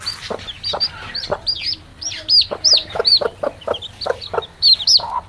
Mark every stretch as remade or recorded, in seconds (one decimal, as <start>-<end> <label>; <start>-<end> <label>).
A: 0.0-5.3 recorded